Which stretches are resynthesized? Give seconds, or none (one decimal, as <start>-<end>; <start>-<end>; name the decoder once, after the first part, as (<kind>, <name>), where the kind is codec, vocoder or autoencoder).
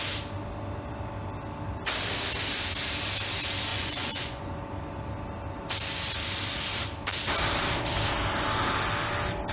3.7-4.6 (vocoder, Vocos)